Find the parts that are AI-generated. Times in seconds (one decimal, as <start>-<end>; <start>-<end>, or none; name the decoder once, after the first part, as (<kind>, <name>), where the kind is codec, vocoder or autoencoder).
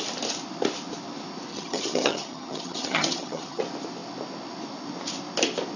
1.5-3.6 (vocoder, HiFi-GAN)